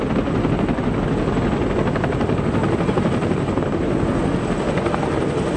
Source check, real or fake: real